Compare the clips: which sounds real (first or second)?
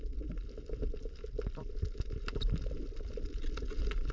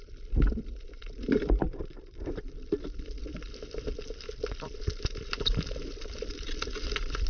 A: first